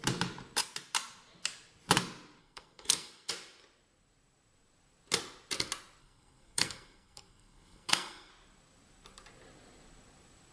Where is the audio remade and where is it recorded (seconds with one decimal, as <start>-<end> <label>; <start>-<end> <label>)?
0.0-2.4 recorded; 2.4-3.3 remade; 3.3-6.0 recorded; 6.0-8.3 remade; 8.3-10.5 recorded